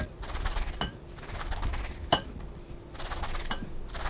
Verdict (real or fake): real